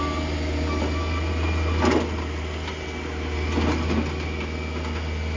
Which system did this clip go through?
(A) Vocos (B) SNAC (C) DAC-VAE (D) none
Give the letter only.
D